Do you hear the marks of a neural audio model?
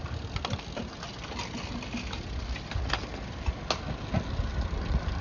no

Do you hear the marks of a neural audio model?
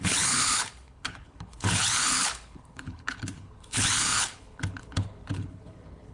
yes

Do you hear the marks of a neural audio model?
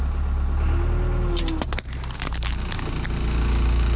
no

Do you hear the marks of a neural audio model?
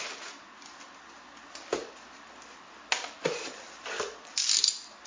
no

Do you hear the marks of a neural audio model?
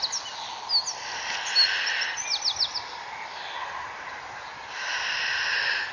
no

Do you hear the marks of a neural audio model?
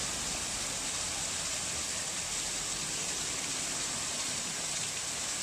no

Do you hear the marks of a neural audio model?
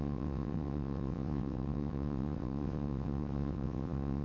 yes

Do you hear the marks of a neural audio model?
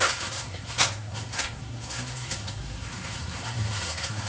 yes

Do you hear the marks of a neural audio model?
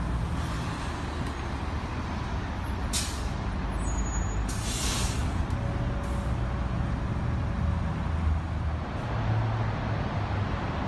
no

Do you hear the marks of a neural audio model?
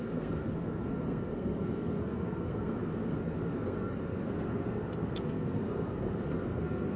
yes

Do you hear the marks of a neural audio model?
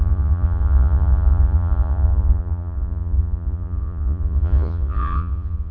yes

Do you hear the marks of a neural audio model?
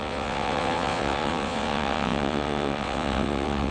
yes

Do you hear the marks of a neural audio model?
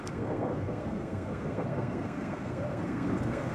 yes